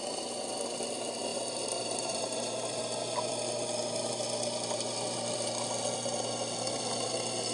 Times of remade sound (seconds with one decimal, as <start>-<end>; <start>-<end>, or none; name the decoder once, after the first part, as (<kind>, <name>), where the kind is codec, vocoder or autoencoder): 1.3-2.8 (vocoder, BigVGAN v2)